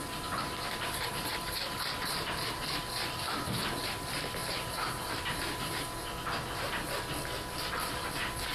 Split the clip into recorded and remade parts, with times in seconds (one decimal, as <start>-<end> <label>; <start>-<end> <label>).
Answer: 0.0-8.5 remade